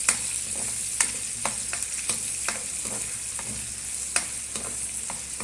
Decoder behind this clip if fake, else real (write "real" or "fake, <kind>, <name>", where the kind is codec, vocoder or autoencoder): real